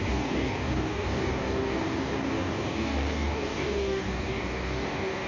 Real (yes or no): no